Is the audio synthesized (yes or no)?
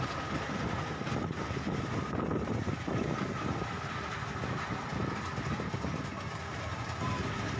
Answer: no